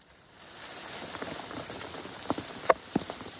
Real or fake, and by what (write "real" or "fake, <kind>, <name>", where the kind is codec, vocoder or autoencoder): real